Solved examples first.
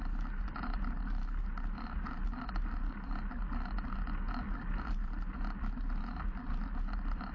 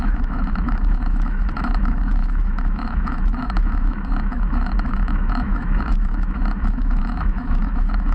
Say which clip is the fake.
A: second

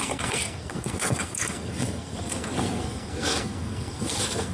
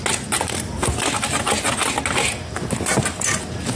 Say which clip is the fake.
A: first